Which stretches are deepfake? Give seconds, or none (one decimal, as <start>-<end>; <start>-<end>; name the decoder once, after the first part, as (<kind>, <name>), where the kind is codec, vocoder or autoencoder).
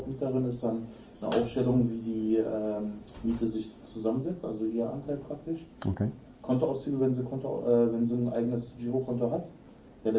1.8-7.0 (autoencoder, DAC-VAE)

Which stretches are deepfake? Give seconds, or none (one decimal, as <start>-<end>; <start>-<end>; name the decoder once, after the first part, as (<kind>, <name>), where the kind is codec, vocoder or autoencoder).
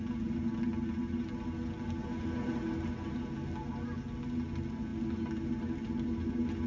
none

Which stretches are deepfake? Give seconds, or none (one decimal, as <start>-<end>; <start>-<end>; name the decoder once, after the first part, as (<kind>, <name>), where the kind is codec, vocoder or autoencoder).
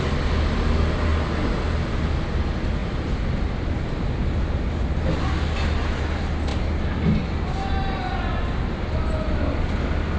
none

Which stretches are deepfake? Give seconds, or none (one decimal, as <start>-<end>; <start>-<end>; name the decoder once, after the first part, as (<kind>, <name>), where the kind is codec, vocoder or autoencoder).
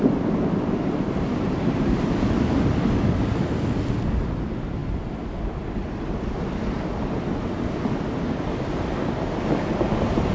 none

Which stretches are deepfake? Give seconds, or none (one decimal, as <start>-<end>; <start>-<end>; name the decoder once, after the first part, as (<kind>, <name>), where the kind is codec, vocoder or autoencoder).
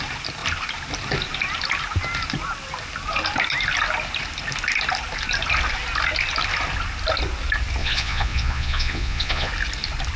7.8-9.5 (vocoder, Vocos)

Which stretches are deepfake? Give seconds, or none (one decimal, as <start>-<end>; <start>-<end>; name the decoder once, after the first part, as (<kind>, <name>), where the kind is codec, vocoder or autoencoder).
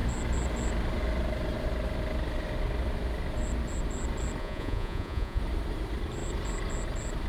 4.4-5.4 (vocoder, Vocos)